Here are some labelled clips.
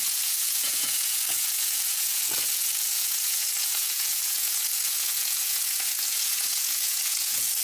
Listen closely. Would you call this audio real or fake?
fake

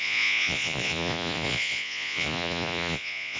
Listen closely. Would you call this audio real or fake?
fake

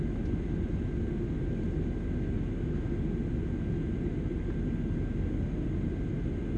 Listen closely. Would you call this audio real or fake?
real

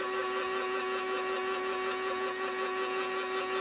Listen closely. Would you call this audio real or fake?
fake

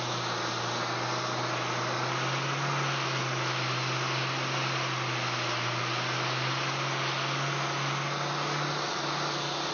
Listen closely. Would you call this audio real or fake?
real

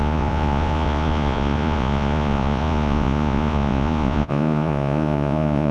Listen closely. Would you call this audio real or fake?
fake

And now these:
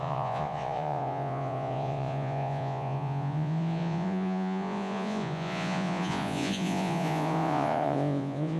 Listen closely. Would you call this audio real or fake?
fake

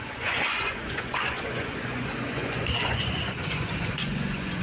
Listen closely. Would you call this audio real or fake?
fake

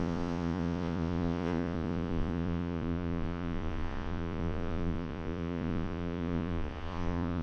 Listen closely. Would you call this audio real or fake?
fake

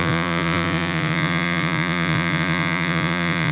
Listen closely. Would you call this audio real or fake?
fake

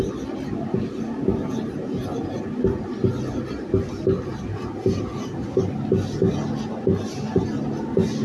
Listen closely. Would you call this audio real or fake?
real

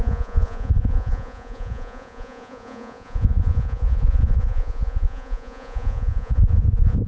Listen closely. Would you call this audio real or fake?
fake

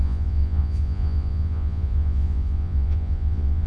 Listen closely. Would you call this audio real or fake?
fake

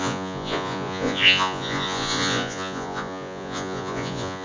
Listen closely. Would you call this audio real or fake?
fake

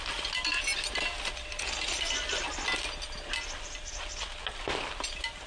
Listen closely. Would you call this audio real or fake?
real